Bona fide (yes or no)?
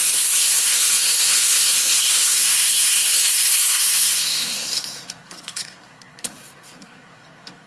no